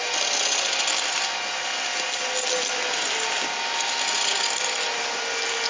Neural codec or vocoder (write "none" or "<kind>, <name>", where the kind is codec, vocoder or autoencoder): none